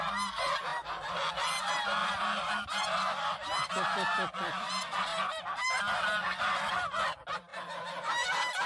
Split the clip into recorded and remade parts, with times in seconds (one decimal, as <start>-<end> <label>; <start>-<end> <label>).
0.0-2.0 recorded; 2.0-2.8 remade; 2.8-5.1 recorded; 5.1-5.8 remade; 5.8-8.7 recorded